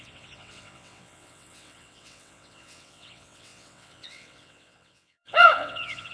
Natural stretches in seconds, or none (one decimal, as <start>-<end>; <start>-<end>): none

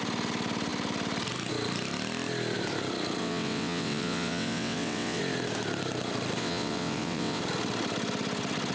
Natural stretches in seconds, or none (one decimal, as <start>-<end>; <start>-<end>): 0.0-3.2; 5.2-6.4; 7.4-8.7

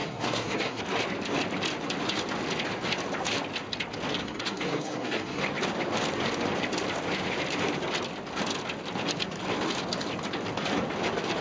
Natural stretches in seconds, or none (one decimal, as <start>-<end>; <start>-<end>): 0.8-4.2; 5.4-11.4